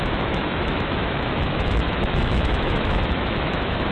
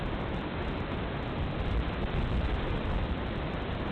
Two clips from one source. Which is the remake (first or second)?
first